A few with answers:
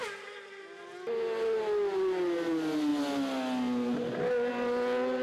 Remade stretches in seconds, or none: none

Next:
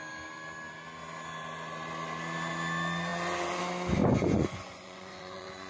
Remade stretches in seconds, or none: 4.0-5.7 (vocoder, Vocos)

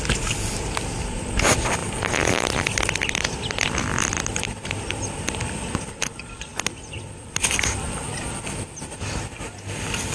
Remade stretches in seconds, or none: none

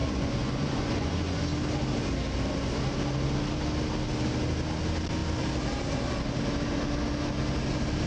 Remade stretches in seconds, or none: 0.0-1.4 (vocoder, Vocos)